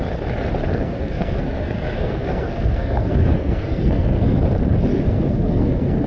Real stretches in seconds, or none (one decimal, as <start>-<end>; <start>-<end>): 0.0-0.7; 4.4-4.9